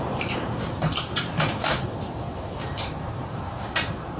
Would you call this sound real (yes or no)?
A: no